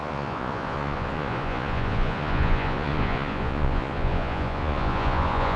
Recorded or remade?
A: remade